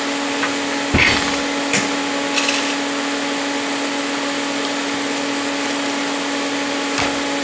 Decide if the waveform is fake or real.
real